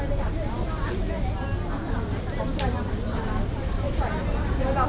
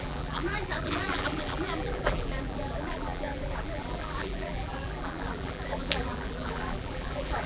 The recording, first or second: first